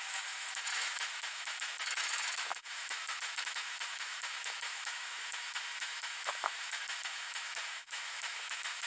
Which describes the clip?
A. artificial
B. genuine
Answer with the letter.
A